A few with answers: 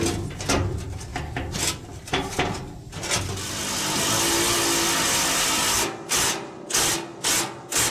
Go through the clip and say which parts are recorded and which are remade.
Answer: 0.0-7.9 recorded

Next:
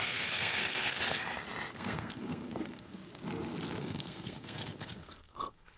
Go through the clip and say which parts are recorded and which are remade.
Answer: 0.0-1.0 remade; 1.0-1.8 recorded; 1.8-3.0 remade; 3.0-3.8 recorded; 3.8-5.8 remade